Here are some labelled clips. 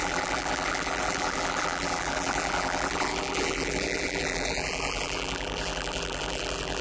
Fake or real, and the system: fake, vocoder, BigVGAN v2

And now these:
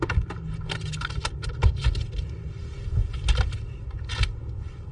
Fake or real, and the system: real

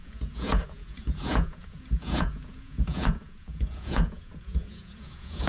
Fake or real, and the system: fake, vocoder, Vocos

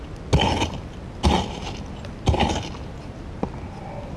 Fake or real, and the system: real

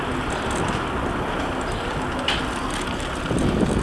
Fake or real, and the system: real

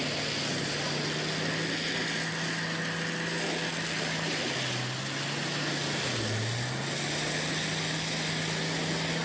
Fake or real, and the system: real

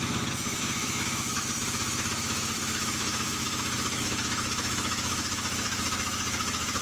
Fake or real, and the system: fake, autoencoder, DAC-VAE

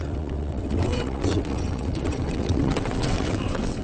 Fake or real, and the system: fake, vocoder, WaveNeXt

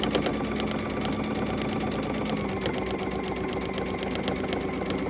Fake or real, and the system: real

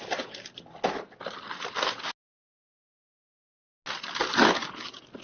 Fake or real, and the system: real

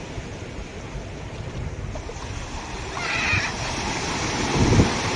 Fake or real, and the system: real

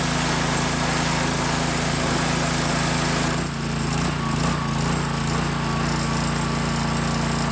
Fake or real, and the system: real